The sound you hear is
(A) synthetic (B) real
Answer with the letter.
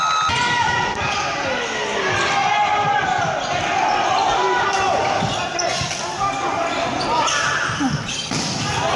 B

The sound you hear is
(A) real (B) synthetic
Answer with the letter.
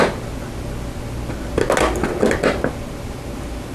A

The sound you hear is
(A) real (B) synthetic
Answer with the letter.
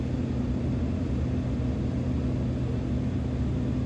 A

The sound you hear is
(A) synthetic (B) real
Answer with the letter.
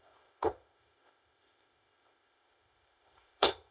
A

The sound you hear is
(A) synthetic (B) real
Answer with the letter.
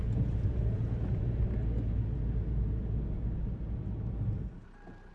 B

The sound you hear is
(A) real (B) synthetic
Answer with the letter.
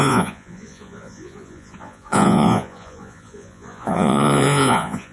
B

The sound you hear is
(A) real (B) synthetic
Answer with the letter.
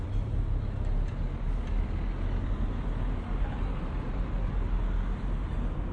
A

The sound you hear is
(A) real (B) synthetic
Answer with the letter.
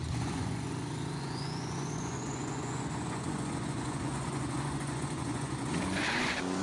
B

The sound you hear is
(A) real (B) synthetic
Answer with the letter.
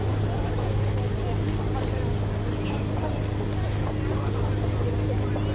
A